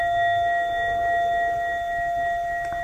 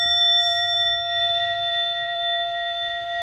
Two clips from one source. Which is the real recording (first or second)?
first